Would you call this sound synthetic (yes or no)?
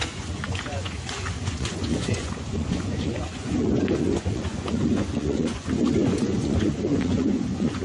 yes